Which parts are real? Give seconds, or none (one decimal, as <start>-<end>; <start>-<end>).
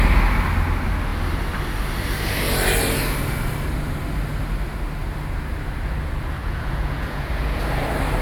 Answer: 0.0-6.4; 7.6-8.2